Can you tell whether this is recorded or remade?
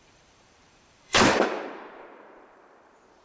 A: remade